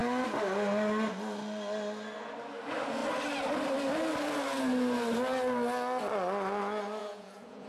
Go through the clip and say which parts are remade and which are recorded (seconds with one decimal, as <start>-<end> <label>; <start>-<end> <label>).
0.0-7.0 recorded; 7.0-7.7 remade